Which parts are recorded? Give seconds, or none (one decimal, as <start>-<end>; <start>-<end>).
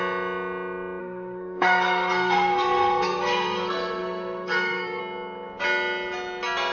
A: 0.0-1.0; 5.0-6.7